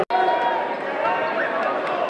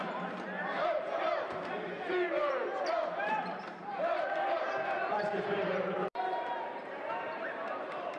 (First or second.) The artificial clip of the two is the second